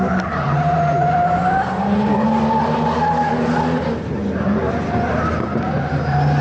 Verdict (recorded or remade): recorded